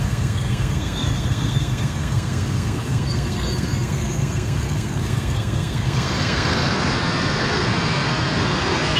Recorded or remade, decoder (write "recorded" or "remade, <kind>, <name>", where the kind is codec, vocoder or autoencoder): remade, codec, SNAC